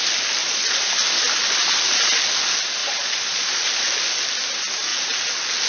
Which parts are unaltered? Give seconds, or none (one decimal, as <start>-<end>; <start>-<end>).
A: 0.0-0.4; 0.9-2.8; 3.7-5.7

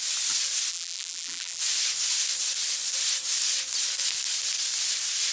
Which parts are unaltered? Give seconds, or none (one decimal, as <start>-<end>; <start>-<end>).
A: 0.0-0.7; 1.6-5.3

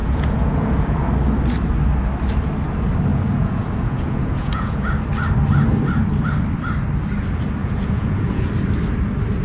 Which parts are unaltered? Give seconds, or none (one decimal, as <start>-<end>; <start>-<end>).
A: 1.1-3.1; 4.9-7.6; 8.5-9.4

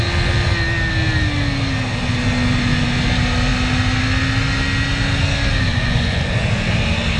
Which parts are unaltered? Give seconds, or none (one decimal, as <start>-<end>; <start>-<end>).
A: 0.0-5.7; 6.3-7.2

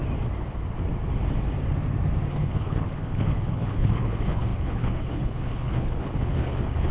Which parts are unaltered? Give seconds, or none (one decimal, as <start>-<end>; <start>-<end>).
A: 0.0-2.3

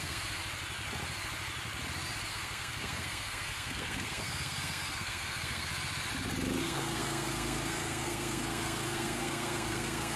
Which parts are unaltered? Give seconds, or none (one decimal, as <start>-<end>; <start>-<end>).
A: 0.4-2.3; 5.7-6.6

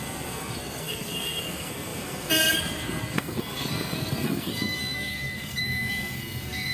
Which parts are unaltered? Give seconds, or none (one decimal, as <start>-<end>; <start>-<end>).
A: none